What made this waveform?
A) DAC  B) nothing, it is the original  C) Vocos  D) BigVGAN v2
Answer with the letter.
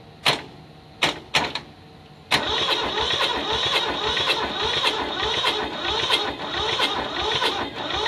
B